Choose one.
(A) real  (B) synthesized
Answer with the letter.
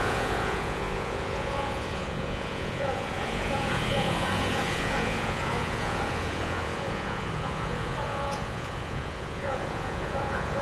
B